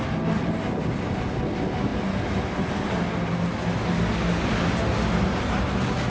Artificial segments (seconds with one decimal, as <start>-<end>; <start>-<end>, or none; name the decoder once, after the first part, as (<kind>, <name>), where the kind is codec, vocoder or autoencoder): none